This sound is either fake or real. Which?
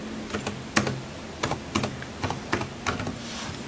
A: real